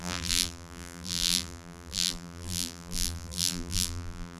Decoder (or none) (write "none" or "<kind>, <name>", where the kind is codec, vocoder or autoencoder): vocoder, BigVGAN v2